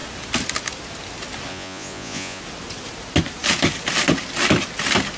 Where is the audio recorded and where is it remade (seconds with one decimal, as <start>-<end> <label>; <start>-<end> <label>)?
0.0-1.5 recorded; 1.5-2.4 remade; 2.4-5.2 recorded